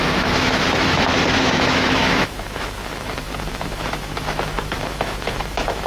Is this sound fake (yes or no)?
yes